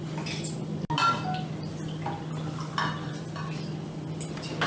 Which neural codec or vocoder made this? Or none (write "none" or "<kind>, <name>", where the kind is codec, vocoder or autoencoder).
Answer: none